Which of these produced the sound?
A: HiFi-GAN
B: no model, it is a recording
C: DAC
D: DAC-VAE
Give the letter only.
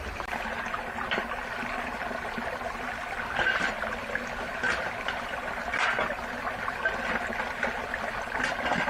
B